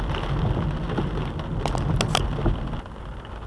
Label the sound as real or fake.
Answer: real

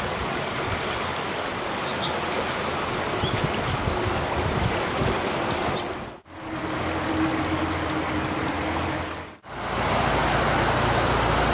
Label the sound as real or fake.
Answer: real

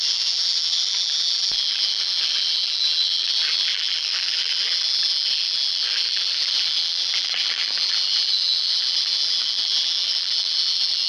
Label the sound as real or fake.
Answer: fake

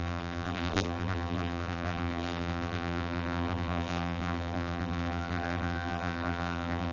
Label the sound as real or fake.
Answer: fake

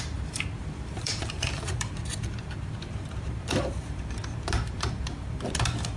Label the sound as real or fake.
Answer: fake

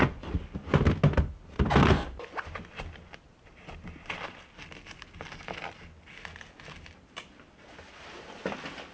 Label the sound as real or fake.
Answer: real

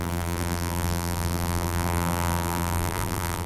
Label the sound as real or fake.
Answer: fake